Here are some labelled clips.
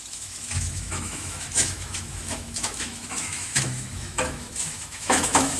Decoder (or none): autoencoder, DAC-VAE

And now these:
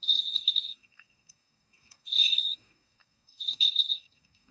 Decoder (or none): codec, DAC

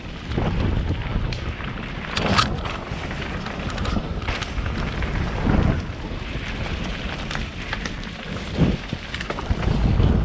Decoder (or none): none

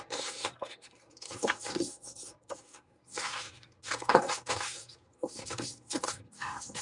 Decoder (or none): codec, SNAC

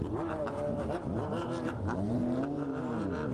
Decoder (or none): vocoder, BigVGAN v2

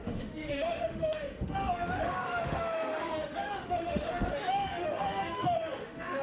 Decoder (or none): autoencoder, DAC-VAE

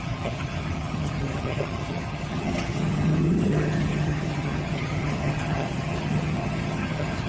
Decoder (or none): vocoder, HiFi-GAN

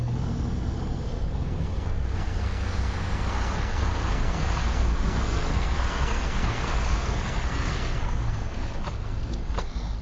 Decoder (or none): codec, SNAC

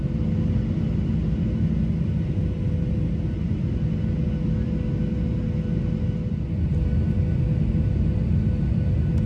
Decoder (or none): none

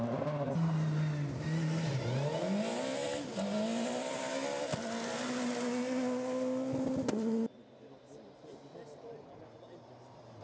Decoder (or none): none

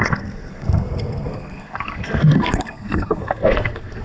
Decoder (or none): codec, SNAC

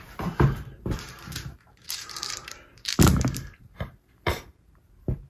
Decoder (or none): vocoder, BigVGAN v2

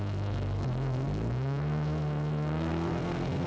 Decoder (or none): codec, SNAC